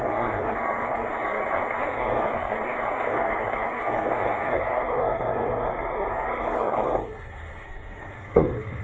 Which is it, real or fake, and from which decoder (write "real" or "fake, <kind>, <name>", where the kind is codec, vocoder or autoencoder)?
fake, codec, SNAC